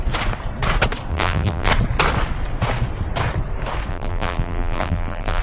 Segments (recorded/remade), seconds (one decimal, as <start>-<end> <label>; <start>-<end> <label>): 0.0-1.1 recorded; 1.1-1.7 remade; 1.7-3.9 recorded; 3.9-5.4 remade